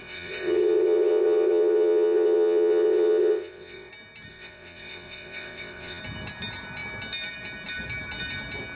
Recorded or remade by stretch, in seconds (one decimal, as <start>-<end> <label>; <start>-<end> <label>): 0.0-3.9 remade; 3.9-4.3 recorded; 4.3-6.0 remade; 6.0-8.8 recorded